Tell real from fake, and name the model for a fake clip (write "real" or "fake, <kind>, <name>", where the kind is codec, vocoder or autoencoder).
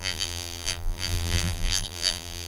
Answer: fake, vocoder, BigVGAN v2